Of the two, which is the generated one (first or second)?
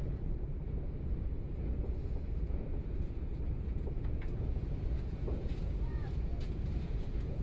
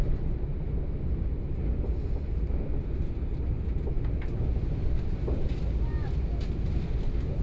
first